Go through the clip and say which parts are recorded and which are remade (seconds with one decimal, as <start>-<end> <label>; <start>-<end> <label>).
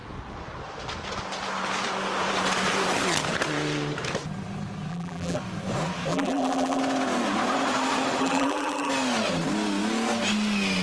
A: 0.0-4.9 recorded; 4.9-5.4 remade; 5.4-6.1 recorded; 6.1-6.8 remade; 6.8-8.2 recorded; 8.2-8.9 remade; 8.9-10.8 recorded